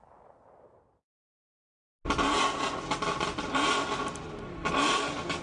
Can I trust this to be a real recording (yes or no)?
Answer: yes